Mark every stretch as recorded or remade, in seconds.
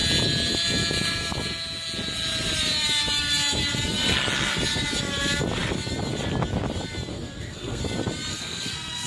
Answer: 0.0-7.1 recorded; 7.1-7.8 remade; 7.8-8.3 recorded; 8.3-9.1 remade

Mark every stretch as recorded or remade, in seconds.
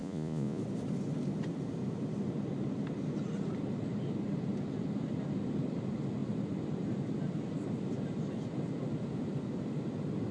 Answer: 0.0-0.6 remade; 0.6-10.3 recorded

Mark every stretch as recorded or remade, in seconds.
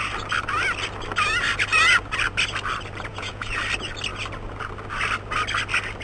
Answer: 0.0-3.1 recorded; 3.1-3.6 remade; 3.6-6.0 recorded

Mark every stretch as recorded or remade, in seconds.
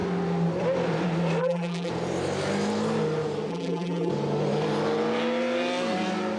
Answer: 0.0-1.4 recorded; 1.4-1.9 remade; 1.9-3.5 recorded; 3.5-4.1 remade; 4.1-6.4 recorded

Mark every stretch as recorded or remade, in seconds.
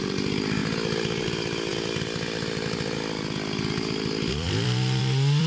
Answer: 0.0-0.6 remade; 0.6-1.2 recorded; 1.2-5.5 remade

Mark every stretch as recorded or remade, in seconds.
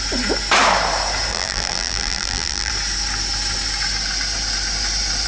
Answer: 0.0-1.3 recorded; 1.3-2.7 remade; 2.7-5.3 recorded